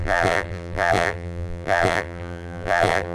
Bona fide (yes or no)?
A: no